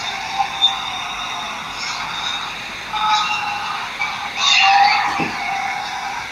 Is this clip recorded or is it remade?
recorded